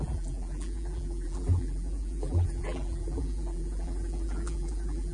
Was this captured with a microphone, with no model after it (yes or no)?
no